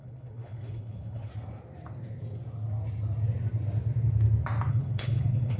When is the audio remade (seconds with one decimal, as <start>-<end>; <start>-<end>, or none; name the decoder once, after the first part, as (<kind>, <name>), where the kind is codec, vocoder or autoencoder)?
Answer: 0.0-1.3 (codec, HILCodec); 4.7-5.6